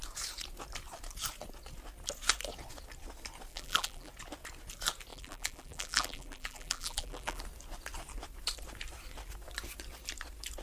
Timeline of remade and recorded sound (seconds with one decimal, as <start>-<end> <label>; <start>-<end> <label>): 0.0-3.5 recorded; 3.5-4.1 remade; 4.1-5.1 recorded; 5.1-7.4 remade; 7.4-10.6 recorded